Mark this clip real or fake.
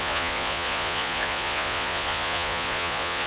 fake